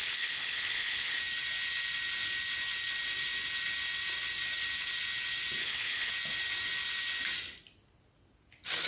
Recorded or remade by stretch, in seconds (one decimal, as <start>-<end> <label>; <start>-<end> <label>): 0.0-1.2 remade; 1.2-5.6 recorded; 5.6-6.1 remade; 6.1-8.9 recorded